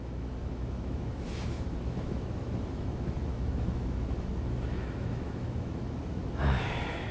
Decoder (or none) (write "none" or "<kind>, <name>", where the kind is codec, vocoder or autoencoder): autoencoder, DAC-VAE